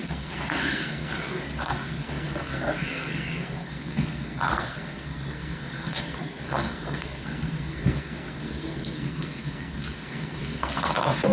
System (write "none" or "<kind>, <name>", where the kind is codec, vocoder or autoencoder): codec, SNAC